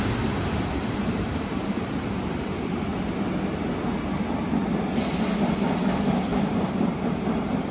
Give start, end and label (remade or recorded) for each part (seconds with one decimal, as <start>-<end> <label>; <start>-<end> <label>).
0.0-0.8 recorded; 0.8-2.2 remade; 2.2-6.3 recorded; 6.3-7.7 remade